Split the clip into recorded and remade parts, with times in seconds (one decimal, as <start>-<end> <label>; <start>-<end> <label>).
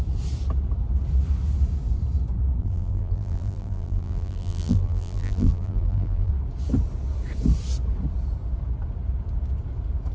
0.0-2.6 recorded; 2.6-6.3 remade; 6.3-10.1 recorded